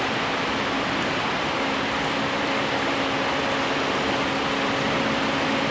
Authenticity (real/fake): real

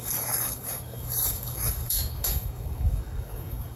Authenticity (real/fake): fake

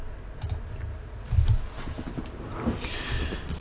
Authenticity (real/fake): real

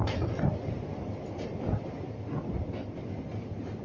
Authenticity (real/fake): real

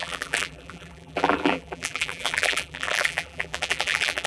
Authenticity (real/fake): fake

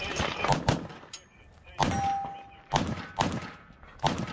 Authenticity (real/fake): real